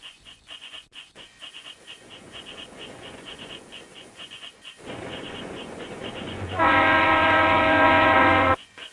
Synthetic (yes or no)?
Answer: yes